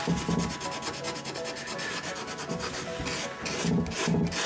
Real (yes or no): yes